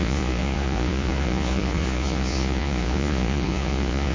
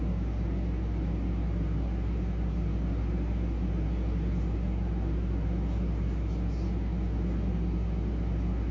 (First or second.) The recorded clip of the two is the second